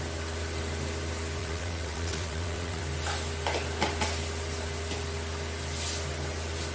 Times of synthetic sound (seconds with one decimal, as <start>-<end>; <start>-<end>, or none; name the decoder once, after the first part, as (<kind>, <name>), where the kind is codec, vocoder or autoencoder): 1.4-2.8 (vocoder, WaveNeXt)